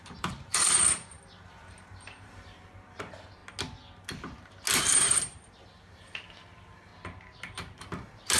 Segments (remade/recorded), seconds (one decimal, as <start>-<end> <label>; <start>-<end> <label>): 0.0-3.4 remade; 3.4-4.8 recorded; 4.8-6.9 remade; 6.9-8.4 recorded